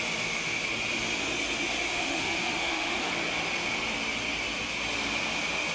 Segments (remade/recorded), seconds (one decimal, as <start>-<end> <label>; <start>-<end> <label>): 0.0-1.9 recorded; 1.9-3.1 remade; 3.1-5.7 recorded